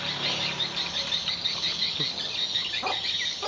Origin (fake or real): real